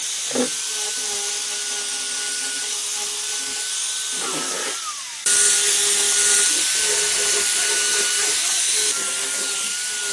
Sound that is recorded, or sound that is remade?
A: recorded